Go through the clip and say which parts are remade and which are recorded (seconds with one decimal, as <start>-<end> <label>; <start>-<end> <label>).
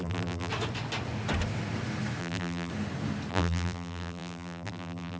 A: 0.0-0.5 remade; 0.5-2.2 recorded; 2.2-2.7 remade; 2.7-3.3 recorded; 3.3-5.2 remade